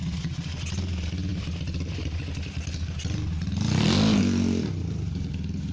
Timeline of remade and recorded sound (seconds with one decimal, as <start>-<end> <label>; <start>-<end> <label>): 0.0-5.7 recorded